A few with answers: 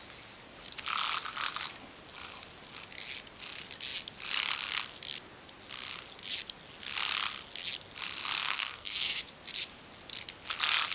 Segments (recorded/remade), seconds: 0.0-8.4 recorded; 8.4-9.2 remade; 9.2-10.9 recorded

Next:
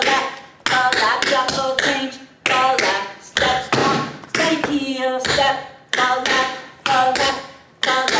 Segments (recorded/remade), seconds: 0.0-3.8 recorded; 3.8-7.3 remade; 7.3-8.2 recorded

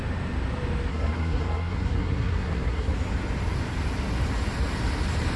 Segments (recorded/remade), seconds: 0.0-0.9 recorded; 0.9-2.9 remade; 2.9-5.4 recorded

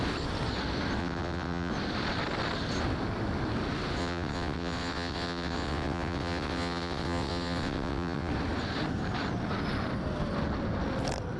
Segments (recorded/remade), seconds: 0.0-1.0 recorded; 1.0-1.7 remade; 1.7-4.0 recorded; 4.0-8.3 remade; 8.3-11.4 recorded

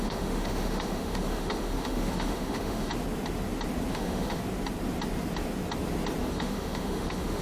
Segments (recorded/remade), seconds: 0.0-2.9 remade; 2.9-3.9 recorded; 3.9-4.4 remade; 4.4-6.2 recorded; 6.2-7.4 remade